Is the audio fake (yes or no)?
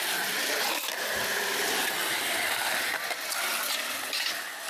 no